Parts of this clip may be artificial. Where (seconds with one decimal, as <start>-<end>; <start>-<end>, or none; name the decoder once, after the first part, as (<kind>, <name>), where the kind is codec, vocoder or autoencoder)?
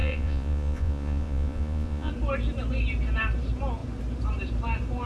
0.0-2.1 (vocoder, Vocos)